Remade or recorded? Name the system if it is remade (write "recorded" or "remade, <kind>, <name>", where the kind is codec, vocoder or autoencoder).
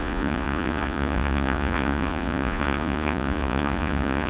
remade, vocoder, Vocos